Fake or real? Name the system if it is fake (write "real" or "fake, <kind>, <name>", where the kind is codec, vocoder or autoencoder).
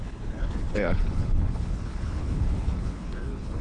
fake, codec, HILCodec